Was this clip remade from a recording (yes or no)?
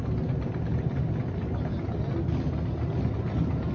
no